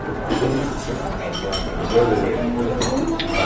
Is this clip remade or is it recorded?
recorded